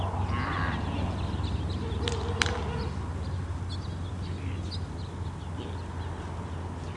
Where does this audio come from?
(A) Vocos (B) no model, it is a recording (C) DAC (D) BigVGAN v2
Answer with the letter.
B